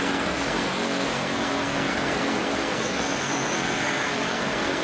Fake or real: fake